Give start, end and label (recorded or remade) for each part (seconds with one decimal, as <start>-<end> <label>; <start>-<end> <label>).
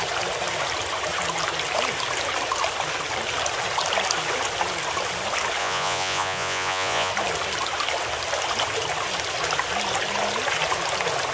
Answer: 0.0-5.6 recorded; 5.6-7.1 remade; 7.1-11.3 recorded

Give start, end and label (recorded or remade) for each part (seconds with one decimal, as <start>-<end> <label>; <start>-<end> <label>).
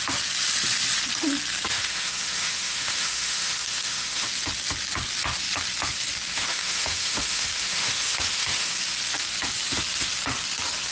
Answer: 0.0-1.7 recorded; 1.7-4.3 remade; 4.3-6.3 recorded; 6.3-8.7 remade; 8.7-10.9 recorded